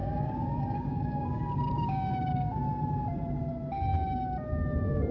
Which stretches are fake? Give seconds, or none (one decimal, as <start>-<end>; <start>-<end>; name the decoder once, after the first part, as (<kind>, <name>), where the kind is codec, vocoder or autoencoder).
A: 0.0-2.6 (codec, DAC)